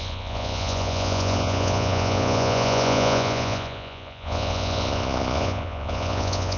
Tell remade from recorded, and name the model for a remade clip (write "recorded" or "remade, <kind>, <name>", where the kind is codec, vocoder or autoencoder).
remade, vocoder, Vocos